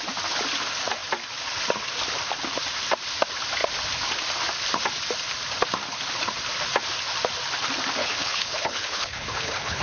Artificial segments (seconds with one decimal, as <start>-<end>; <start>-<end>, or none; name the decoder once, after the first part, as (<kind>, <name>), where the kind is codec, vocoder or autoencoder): 8.0-9.8 (codec, HILCodec)